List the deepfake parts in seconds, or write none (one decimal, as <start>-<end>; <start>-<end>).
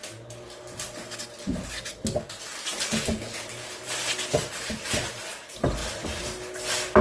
none